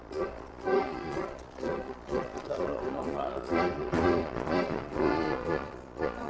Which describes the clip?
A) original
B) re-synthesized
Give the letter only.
B